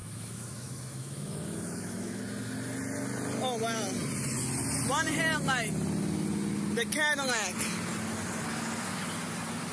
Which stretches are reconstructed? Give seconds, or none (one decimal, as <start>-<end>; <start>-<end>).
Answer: 0.0-2.2